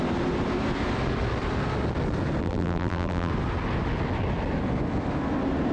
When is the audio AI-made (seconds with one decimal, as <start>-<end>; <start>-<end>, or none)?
2.4-3.3